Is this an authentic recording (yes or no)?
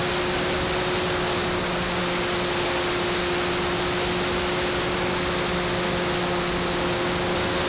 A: yes